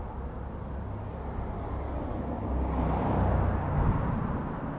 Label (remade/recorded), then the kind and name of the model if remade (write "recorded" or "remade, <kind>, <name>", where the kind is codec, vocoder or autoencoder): recorded